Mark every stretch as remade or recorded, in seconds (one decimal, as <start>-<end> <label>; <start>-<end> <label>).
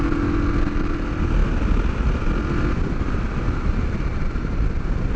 0.0-4.1 recorded; 4.1-4.6 remade; 4.6-5.2 recorded